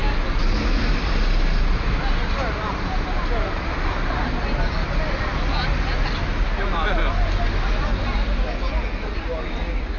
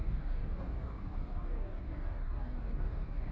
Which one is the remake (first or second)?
second